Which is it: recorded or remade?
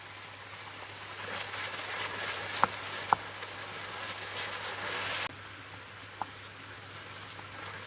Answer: recorded